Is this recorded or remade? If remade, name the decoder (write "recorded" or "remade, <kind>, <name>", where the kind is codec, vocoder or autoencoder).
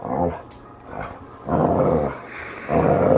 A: recorded